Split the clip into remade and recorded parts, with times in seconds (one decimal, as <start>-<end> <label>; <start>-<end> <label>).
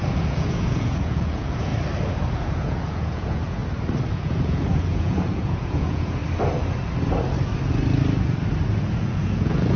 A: 0.0-1.7 remade; 1.7-2.3 recorded; 2.3-3.6 remade; 3.6-4.1 recorded; 4.1-6.2 remade; 6.2-8.7 recorded; 8.7-9.8 remade